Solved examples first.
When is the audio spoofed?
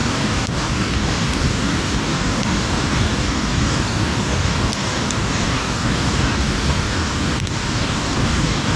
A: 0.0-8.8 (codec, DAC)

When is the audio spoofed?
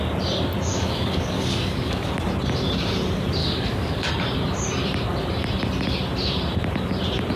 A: 0.7-2.1 (codec, DAC); 3.4-4.1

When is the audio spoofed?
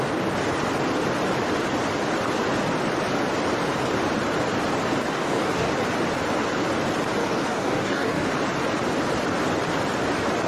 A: 5.1-5.7 (codec, DAC); 7.2-8.3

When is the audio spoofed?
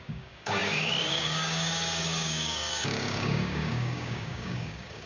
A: 0.0-5.1 (codec, DAC)